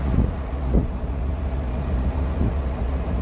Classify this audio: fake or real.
fake